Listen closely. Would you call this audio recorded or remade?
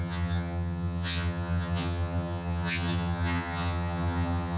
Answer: remade